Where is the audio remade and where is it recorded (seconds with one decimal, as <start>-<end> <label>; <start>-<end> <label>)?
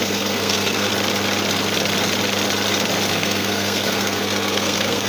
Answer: 0.0-0.9 remade; 0.9-3.1 recorded; 3.1-5.1 remade